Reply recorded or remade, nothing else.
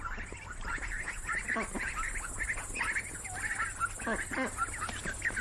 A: recorded